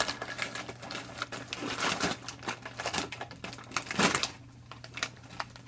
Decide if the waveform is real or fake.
real